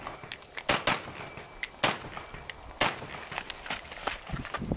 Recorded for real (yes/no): yes